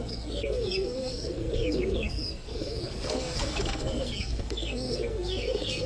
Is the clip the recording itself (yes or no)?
no